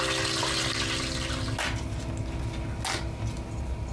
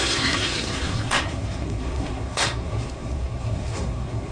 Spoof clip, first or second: second